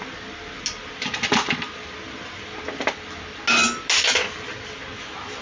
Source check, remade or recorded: recorded